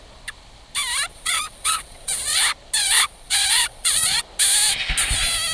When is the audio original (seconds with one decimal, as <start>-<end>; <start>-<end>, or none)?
0.0-1.1; 2.4-2.8; 4.2-5.5